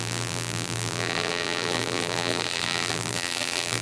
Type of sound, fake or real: fake